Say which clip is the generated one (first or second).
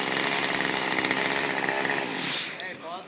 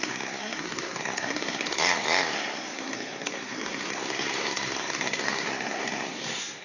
second